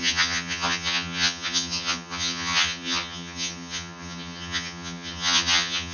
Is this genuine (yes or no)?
no